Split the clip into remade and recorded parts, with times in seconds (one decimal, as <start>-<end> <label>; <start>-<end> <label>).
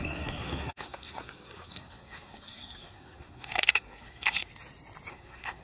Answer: 0.0-4.5 remade; 4.5-5.1 recorded; 5.1-5.6 remade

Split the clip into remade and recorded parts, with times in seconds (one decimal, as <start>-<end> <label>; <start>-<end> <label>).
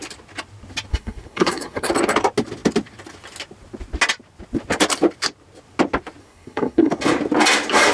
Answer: 0.0-0.9 recorded; 0.9-1.9 remade; 1.9-6.2 recorded; 6.2-6.9 remade; 6.9-7.9 recorded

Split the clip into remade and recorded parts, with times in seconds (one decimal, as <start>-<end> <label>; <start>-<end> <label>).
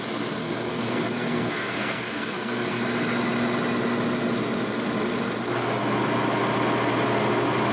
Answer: 0.0-0.4 recorded; 0.4-2.8 remade; 2.8-7.7 recorded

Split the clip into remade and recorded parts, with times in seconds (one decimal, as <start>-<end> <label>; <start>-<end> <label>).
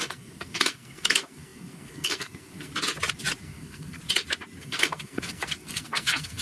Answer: 0.0-2.7 remade; 2.7-3.4 recorded; 3.4-4.0 remade; 4.0-4.6 recorded; 4.6-6.4 remade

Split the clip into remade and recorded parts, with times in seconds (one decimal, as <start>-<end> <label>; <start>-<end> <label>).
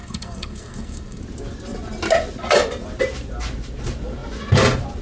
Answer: 0.0-1.2 remade; 1.2-5.0 recorded